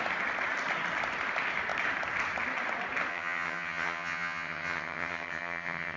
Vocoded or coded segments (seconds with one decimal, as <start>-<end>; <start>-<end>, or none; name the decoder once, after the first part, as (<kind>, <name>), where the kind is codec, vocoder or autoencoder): 3.1-6.0 (vocoder, HiFi-GAN)